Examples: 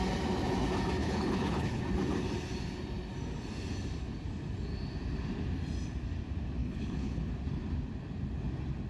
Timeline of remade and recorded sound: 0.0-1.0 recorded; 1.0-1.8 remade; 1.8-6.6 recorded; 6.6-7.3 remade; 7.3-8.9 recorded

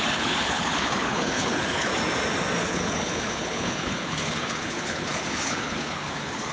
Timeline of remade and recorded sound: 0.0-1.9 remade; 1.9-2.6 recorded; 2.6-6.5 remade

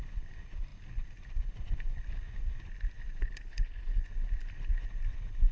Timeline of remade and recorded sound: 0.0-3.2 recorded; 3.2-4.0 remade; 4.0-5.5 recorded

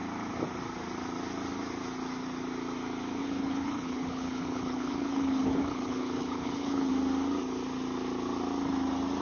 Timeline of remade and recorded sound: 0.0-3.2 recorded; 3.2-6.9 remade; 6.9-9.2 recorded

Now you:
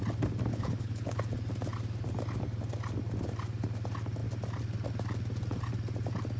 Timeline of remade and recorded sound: 0.0-0.5 recorded; 0.5-1.2 remade; 1.2-6.4 recorded